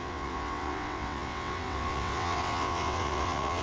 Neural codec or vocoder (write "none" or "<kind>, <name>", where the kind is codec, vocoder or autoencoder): vocoder, WaveNeXt